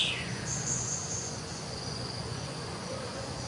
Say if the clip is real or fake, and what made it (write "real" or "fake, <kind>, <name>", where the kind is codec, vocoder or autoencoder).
fake, vocoder, Vocos